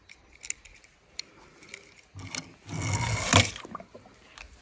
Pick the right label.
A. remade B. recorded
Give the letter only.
B